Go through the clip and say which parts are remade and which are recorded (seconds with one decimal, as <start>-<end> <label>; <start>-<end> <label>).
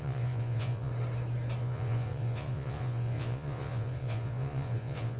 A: 0.0-0.9 remade; 0.9-1.6 recorded; 1.6-5.2 remade